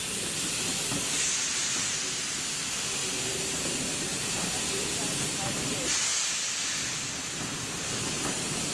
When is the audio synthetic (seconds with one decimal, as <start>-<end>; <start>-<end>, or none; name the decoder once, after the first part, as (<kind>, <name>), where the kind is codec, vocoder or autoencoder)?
1.5-2.0 (vocoder, BigVGAN v2); 3.0-5.2